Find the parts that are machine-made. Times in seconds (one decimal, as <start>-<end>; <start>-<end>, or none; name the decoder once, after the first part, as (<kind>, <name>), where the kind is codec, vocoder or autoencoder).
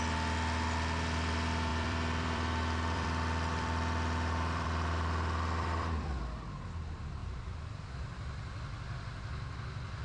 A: 1.7-6.2 (vocoder, BigVGAN v2); 7.2-7.9